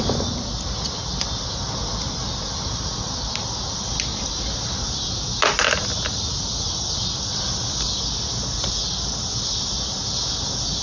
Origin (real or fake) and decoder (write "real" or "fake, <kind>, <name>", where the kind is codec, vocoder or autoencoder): real